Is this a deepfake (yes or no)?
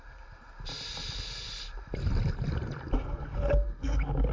no